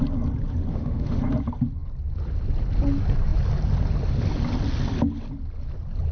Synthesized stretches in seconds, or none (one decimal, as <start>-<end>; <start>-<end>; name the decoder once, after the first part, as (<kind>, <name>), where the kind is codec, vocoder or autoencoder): 0.7-1.2 (autoencoder, DAC-VAE)